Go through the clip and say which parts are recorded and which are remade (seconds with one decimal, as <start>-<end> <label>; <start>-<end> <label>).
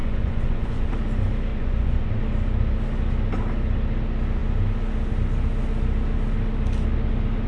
0.0-0.9 remade; 0.9-1.5 recorded; 1.5-2.2 remade; 2.2-7.5 recorded